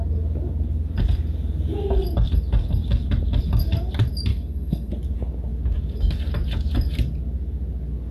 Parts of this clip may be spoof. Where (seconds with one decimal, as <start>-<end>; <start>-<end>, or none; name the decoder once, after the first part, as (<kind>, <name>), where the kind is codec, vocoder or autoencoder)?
4.3-4.9 (codec, SNAC)